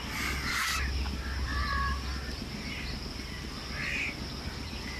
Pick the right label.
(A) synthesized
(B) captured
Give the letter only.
B